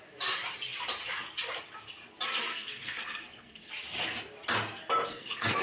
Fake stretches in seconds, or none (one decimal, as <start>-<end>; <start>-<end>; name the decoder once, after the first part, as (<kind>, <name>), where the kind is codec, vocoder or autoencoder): 2.5-3.7 (codec, SNAC); 5.1-5.6